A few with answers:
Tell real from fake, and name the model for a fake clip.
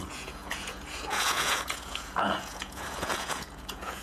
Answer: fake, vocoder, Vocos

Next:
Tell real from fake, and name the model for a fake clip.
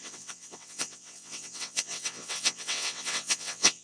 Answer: fake, vocoder, WaveNeXt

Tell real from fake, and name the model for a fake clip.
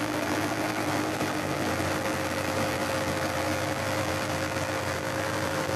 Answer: fake, vocoder, BigVGAN v2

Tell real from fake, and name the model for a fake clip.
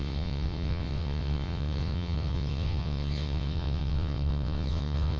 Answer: fake, vocoder, WaveNeXt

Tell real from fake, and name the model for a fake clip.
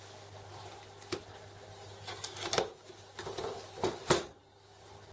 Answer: real